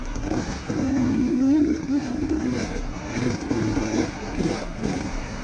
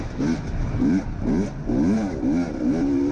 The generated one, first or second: first